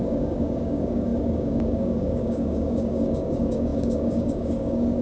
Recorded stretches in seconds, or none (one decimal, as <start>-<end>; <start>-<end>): none